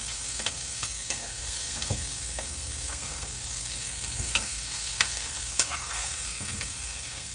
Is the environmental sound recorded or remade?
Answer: remade